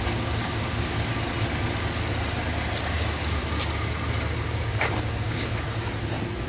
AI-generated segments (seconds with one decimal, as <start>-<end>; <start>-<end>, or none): 0.0-1.1; 2.8-3.4; 4.6-5.5